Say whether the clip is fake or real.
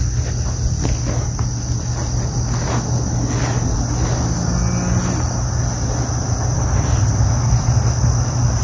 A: real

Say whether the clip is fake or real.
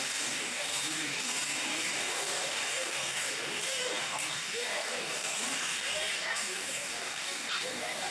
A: fake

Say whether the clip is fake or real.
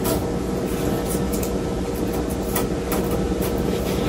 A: real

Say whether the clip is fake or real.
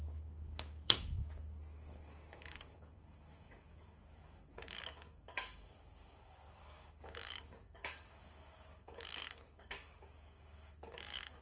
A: fake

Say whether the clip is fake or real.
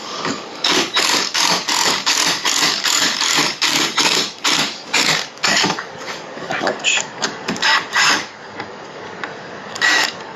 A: fake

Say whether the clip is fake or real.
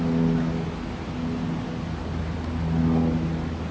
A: real